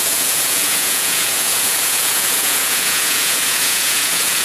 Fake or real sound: fake